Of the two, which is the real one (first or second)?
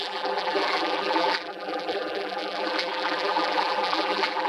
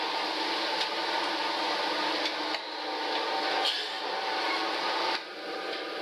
second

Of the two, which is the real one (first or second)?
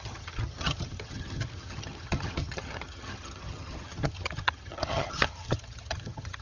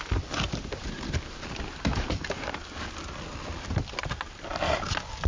second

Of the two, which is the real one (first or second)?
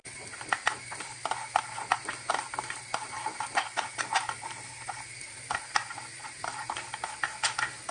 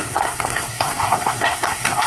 first